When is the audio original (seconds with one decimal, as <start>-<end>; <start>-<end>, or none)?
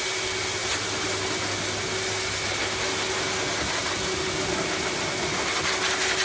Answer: 0.0-6.2